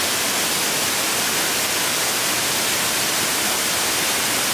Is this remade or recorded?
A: recorded